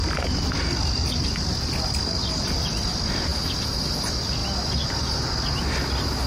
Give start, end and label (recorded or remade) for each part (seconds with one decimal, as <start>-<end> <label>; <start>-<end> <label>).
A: 0.0-6.3 recorded